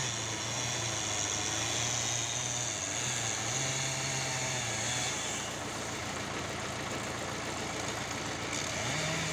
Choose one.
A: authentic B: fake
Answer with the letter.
A